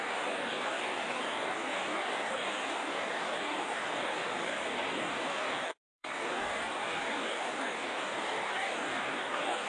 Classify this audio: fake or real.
fake